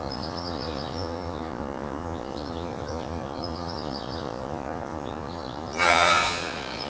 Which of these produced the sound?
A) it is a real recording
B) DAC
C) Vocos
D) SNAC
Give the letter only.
C